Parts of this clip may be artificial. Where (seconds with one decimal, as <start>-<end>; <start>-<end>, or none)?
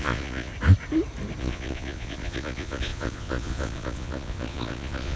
0.0-0.5; 1.4-5.2